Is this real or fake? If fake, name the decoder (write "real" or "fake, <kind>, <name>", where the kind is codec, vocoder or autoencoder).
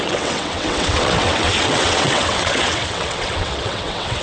fake, vocoder, WaveNeXt